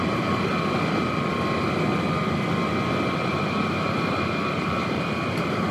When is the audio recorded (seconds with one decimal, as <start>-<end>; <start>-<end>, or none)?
0.5-3.1